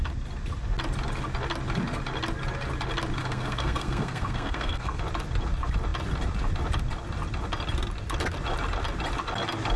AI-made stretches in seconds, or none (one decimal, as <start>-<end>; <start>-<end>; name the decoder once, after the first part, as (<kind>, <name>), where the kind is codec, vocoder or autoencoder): 3.2-5.0 (codec, SNAC)